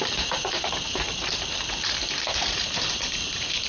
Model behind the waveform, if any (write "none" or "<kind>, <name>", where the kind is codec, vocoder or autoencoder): vocoder, BigVGAN v2